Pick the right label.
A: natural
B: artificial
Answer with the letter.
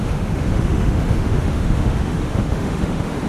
B